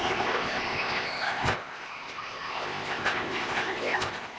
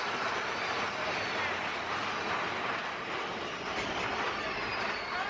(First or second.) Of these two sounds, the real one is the second